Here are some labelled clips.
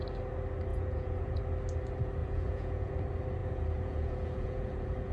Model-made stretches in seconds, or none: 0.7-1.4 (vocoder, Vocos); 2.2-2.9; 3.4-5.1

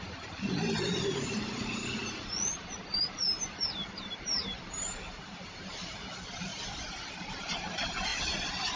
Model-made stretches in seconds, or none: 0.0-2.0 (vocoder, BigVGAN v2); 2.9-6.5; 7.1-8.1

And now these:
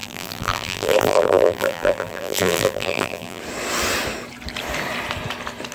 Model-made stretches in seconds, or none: 0.0-3.4 (vocoder, BigVGAN v2)

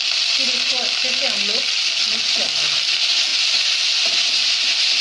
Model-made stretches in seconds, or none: none

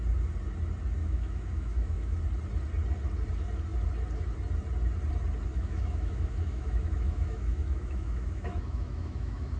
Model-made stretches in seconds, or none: 1.0-2.2 (autoencoder, DAC-VAE); 5.5-9.6

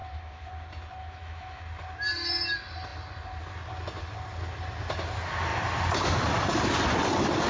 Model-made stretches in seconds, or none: 0.0-0.5 (autoencoder, DAC-VAE); 1.0-1.6

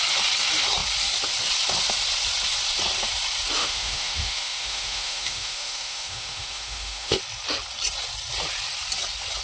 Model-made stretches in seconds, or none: 3.6-7.2 (autoencoder, DAC-VAE)